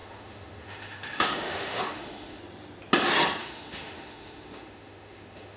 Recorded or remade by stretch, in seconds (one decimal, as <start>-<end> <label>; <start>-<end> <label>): 0.0-2.4 remade; 2.4-3.4 recorded; 3.4-5.6 remade